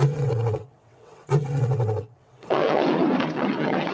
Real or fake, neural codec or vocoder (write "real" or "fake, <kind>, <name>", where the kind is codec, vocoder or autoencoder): fake, vocoder, WaveNeXt